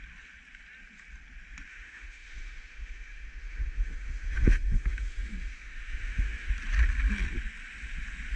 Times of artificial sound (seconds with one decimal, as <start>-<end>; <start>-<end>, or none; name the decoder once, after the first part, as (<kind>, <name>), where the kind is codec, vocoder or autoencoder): 1.7-6.5 (autoencoder, DAC-VAE)